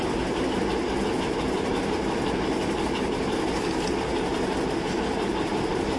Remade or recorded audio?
recorded